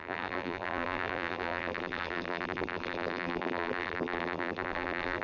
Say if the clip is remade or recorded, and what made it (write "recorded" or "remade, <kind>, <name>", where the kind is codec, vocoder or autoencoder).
remade, vocoder, BigVGAN v2